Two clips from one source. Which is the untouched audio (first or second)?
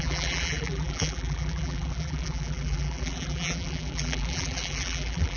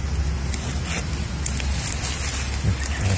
second